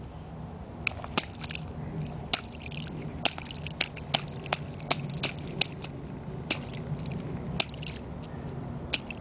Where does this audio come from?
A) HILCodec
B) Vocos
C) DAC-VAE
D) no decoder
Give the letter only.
D